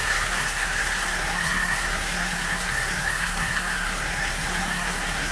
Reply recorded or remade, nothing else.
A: remade